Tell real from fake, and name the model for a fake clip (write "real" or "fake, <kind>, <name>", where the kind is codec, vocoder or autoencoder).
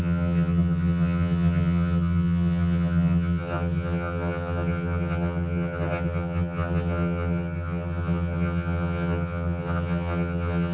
fake, vocoder, HiFi-GAN